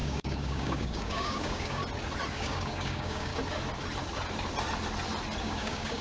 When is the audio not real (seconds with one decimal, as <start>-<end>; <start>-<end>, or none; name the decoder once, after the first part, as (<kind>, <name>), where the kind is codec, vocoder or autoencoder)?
0.0-1.8 (codec, DAC); 2.3-3.3; 5.4-6.0